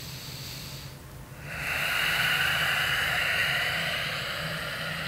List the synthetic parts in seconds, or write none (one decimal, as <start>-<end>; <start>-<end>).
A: 3.4-4.2